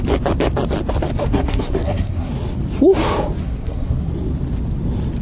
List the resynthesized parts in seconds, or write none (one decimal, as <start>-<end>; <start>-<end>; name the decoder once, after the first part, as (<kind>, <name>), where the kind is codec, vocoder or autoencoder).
1.3-2.3 (codec, SNAC); 3.4-4.1